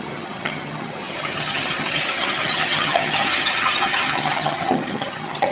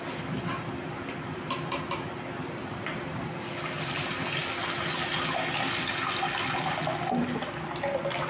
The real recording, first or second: second